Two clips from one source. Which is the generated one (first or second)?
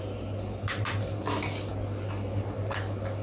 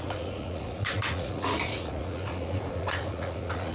second